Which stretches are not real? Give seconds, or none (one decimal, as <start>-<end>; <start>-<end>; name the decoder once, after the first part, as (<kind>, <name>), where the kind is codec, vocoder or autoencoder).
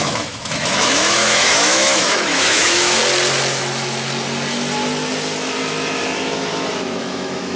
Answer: 0.0-3.0 (autoencoder, DAC-VAE); 7.0-7.6